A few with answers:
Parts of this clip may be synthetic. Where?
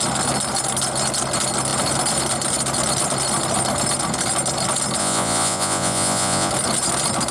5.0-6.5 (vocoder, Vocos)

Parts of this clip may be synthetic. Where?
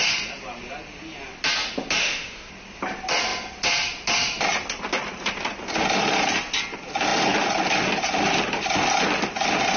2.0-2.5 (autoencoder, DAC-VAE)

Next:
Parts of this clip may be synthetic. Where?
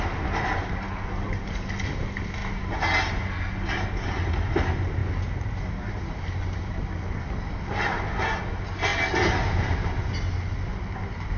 none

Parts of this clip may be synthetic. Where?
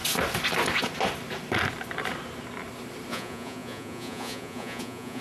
3.1-5.2 (vocoder, Vocos)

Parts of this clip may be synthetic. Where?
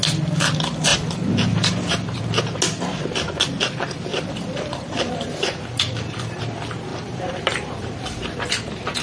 0.9-2.2 (vocoder, BigVGAN v2); 4.1-6.4; 6.9-8.2